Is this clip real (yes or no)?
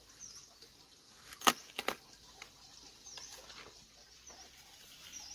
yes